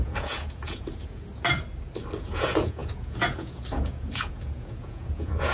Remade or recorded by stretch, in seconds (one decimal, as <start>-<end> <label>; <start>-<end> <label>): 0.0-1.3 remade; 1.3-2.2 recorded; 2.2-5.5 remade